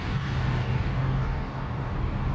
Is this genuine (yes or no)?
no